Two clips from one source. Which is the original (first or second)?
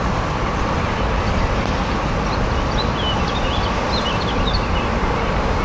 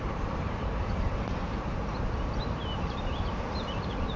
first